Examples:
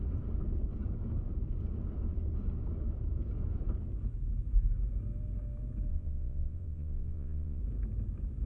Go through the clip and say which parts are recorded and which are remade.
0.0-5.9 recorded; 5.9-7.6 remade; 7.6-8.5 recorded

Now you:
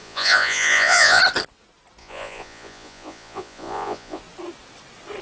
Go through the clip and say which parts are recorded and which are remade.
0.0-1.2 remade; 1.2-2.0 recorded; 2.0-4.2 remade; 4.2-5.2 recorded

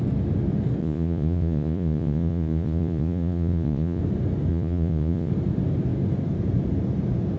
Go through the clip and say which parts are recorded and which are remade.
0.0-0.8 recorded; 0.8-4.0 remade; 4.0-4.5 recorded; 4.5-5.3 remade; 5.3-7.4 recorded

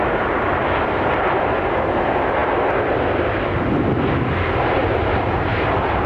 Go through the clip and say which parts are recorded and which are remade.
0.0-4.8 recorded; 4.8-6.1 remade

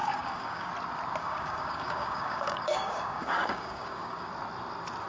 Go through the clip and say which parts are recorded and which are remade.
0.0-0.7 remade; 0.7-1.2 recorded; 1.2-4.3 remade; 4.3-5.1 recorded

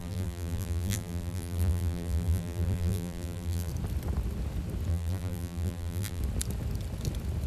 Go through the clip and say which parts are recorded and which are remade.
0.0-3.7 remade; 3.7-4.9 recorded; 4.9-6.2 remade; 6.2-7.5 recorded